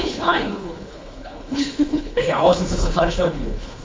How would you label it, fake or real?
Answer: fake